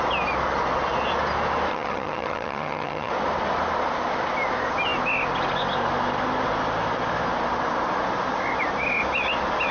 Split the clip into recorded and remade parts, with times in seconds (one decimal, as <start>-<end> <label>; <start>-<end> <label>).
0.0-1.7 recorded; 1.7-3.1 remade; 3.1-9.7 recorded